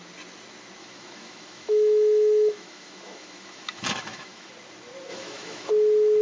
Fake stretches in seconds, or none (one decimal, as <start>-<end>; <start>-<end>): 0.8-4.5; 5.1-5.7